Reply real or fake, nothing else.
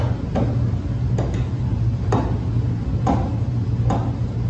real